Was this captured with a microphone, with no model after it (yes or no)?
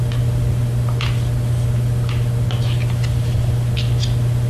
yes